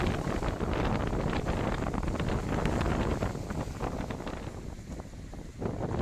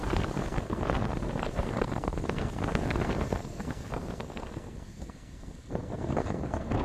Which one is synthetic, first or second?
second